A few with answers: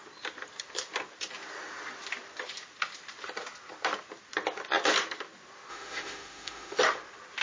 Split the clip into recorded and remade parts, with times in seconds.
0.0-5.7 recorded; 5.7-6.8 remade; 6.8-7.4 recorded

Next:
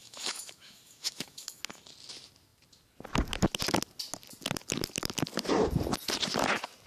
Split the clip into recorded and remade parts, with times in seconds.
0.0-1.6 remade; 1.6-6.9 recorded

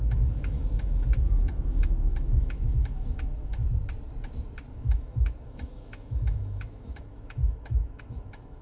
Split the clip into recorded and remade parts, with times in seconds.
0.0-3.6 remade; 3.6-4.7 recorded; 4.7-8.6 remade

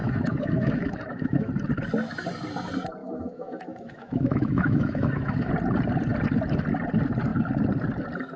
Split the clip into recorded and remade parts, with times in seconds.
0.0-1.5 remade; 1.5-3.0 recorded; 3.0-5.5 remade; 5.5-8.4 recorded

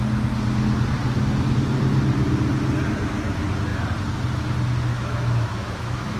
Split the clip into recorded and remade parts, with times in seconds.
0.0-4.9 recorded; 4.9-6.2 remade

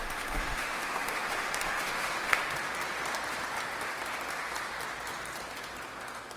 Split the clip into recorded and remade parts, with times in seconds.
0.0-2.4 remade; 2.4-6.4 recorded

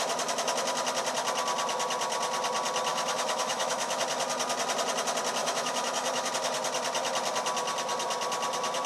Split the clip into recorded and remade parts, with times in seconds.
0.0-2.9 recorded; 2.9-4.0 remade; 4.0-5.4 recorded; 5.4-6.3 remade; 6.3-8.9 recorded

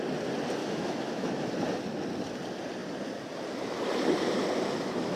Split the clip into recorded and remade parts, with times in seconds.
0.0-0.6 recorded; 0.6-1.5 remade; 1.5-5.2 recorded